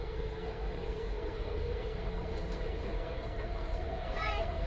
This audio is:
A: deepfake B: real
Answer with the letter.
A